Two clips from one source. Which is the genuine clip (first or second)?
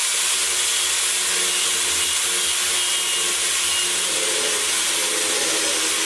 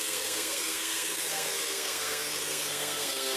first